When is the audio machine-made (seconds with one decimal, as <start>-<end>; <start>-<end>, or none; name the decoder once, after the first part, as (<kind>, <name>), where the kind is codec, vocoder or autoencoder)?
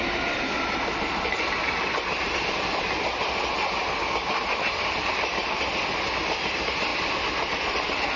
none